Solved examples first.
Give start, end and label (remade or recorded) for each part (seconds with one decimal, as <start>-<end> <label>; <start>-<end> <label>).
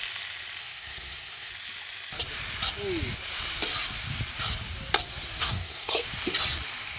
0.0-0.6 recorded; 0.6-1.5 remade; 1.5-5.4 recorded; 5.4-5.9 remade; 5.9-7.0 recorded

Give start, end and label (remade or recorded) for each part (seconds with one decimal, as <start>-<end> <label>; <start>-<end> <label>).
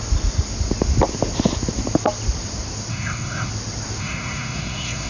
0.0-2.9 recorded; 2.9-3.5 remade; 3.5-4.0 recorded; 4.0-5.1 remade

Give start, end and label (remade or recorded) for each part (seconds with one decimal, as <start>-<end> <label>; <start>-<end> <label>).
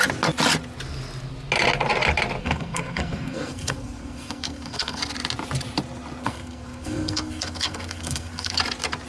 0.0-2.4 recorded; 2.4-5.0 remade; 5.0-6.2 recorded; 6.2-8.6 remade; 8.6-9.1 recorded